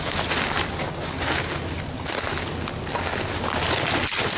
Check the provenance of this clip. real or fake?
real